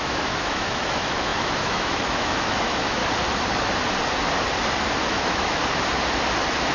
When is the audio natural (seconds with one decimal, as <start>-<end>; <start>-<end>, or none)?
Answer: 3.0-5.1; 5.6-6.7